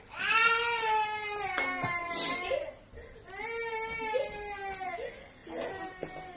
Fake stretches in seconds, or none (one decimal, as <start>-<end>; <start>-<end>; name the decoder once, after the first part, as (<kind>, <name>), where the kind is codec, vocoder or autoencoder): none